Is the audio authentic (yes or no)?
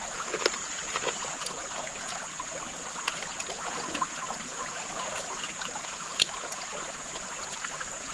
no